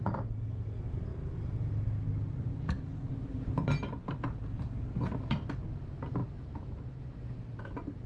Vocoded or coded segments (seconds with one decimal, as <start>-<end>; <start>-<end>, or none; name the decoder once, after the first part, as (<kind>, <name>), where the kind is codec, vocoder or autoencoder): none